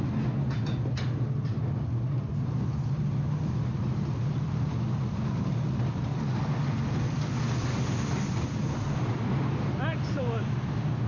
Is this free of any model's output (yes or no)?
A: yes